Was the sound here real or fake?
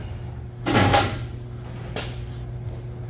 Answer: real